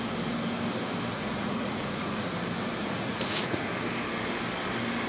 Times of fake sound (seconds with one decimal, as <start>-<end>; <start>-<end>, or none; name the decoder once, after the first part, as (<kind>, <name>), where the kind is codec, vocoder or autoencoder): 1.1-2.3 (vocoder, Vocos); 2.8-3.7